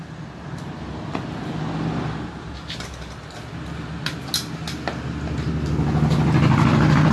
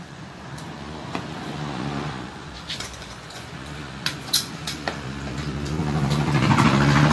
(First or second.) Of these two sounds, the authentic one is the first